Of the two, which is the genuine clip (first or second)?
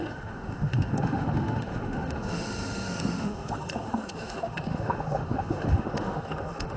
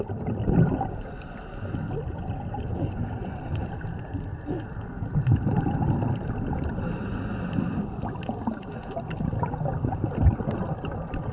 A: second